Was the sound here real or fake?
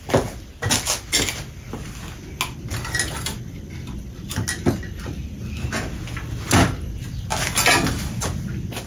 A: real